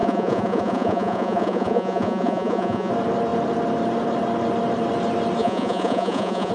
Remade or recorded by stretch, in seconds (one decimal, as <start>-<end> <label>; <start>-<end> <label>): 0.0-2.9 remade; 2.9-5.4 recorded; 5.4-6.5 remade